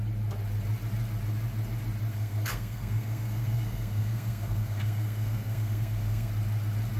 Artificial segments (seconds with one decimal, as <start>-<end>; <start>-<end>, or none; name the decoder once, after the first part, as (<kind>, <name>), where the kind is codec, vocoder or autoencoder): 2.1-6.3 (codec, SNAC)